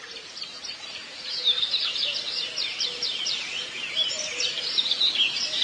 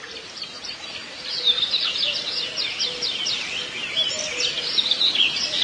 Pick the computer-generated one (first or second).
first